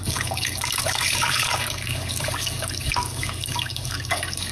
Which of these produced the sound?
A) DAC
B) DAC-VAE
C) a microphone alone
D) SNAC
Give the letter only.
A